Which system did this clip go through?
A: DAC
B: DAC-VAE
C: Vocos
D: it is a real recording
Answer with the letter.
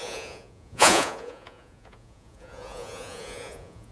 C